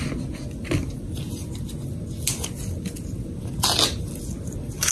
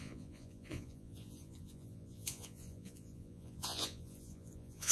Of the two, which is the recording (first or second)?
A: first